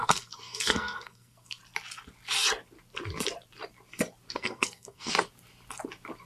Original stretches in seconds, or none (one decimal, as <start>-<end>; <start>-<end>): 1.6-4.3; 5.1-6.3